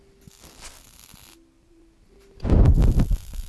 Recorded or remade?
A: recorded